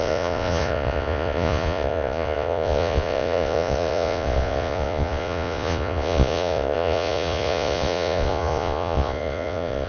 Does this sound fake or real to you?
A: fake